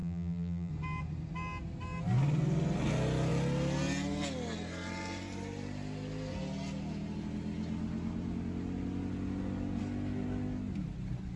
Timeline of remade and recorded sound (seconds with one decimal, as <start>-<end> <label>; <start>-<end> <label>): 0.0-0.7 remade; 0.7-11.4 recorded